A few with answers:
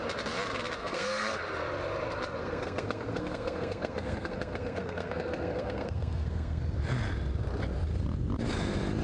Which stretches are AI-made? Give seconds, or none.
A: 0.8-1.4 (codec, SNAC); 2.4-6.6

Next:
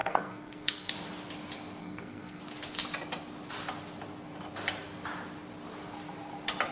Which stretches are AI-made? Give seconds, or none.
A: 0.0-0.9 (codec, SNAC); 1.8-2.4

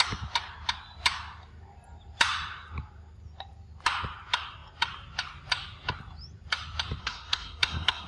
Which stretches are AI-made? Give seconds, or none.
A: 7.0-8.1 (codec, SNAC)

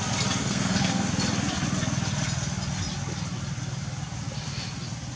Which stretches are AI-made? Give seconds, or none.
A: 0.4-1.1 (codec, SNAC)

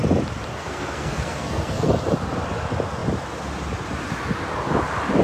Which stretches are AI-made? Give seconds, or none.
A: 0.5-2.0 (codec, SNAC)

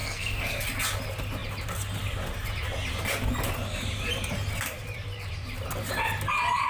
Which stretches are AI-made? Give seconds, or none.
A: 0.0-0.6 (codec, SNAC)